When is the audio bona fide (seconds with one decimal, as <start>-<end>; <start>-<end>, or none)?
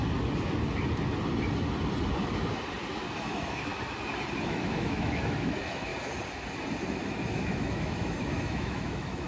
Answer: 0.0-3.2; 3.7-4.4; 5.9-7.0